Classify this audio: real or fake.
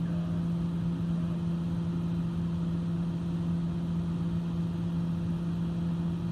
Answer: real